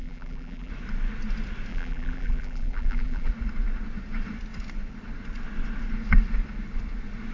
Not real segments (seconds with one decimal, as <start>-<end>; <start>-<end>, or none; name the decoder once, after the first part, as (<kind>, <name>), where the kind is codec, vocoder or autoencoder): 0.0-0.7 (vocoder, BigVGAN v2); 1.7-3.3